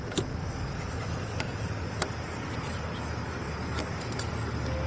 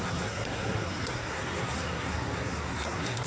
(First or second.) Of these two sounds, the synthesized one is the second